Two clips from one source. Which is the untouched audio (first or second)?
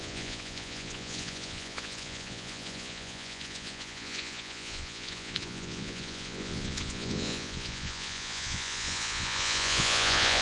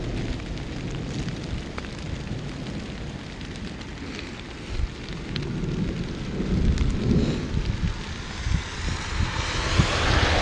second